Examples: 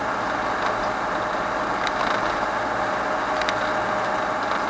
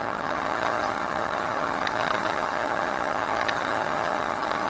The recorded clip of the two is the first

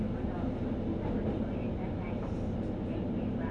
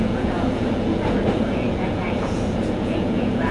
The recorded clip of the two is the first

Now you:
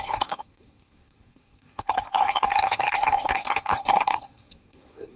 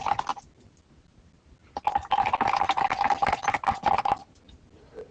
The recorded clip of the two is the second